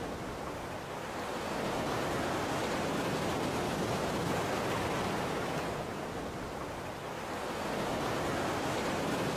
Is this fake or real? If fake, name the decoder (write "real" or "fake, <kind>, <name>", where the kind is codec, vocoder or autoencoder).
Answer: real